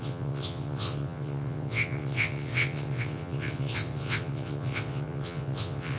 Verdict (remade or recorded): remade